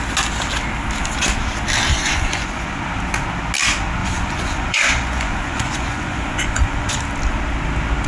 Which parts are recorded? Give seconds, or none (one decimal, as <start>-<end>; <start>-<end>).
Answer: 0.0-1.9; 2.8-4.0; 6.9-8.1